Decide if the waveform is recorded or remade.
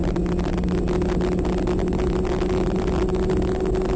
recorded